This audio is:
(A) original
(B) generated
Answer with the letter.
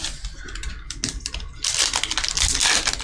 A